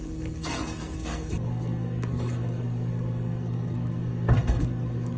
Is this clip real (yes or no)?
no